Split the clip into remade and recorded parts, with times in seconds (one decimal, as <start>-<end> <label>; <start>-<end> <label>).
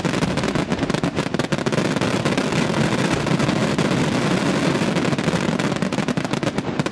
0.0-1.7 recorded; 1.7-3.0 remade; 3.0-6.9 recorded